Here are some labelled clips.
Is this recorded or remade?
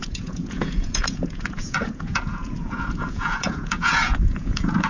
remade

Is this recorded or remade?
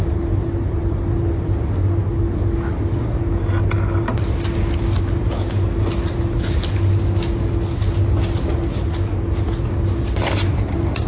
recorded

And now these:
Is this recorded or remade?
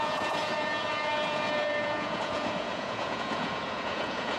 remade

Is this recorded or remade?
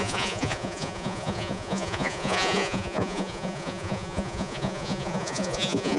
remade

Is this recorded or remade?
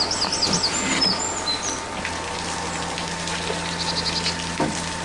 recorded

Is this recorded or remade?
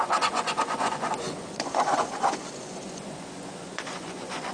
remade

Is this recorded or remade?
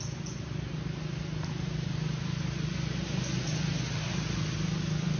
recorded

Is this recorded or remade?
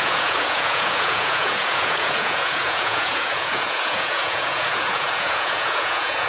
remade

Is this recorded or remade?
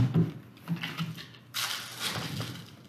recorded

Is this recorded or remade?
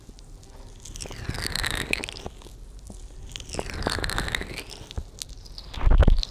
recorded